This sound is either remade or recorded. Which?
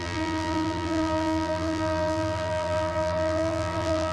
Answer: remade